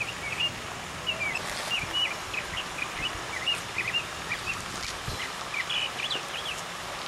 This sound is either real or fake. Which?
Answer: real